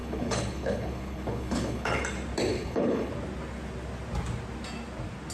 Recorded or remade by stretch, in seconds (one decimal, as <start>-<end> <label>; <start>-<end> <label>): 0.0-2.0 remade; 2.0-2.5 recorded; 2.5-3.1 remade; 3.1-5.3 recorded